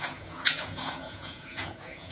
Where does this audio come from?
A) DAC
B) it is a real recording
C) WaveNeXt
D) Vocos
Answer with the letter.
D